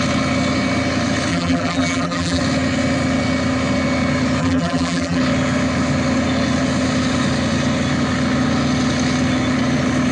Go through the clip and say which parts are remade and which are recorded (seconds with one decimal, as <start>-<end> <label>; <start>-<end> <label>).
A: 0.0-1.3 recorded; 1.3-2.4 remade; 2.4-4.4 recorded; 4.4-5.2 remade; 5.2-10.1 recorded